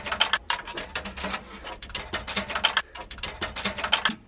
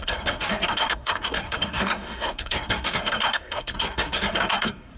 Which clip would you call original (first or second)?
first